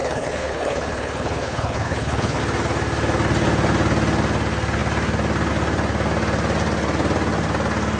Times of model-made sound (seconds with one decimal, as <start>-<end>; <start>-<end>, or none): 0.0-2.4